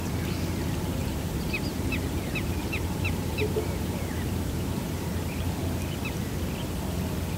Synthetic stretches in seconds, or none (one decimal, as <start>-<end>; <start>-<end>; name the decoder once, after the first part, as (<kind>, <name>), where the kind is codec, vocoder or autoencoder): 1.0-5.1 (vocoder, BigVGAN v2)